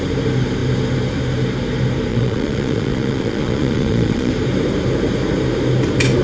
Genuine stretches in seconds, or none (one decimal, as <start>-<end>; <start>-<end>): 0.0-2.1; 4.3-6.2